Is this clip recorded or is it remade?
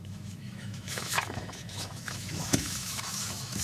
remade